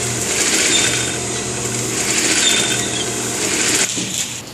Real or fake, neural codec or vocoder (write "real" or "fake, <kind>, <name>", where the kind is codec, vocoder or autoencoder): real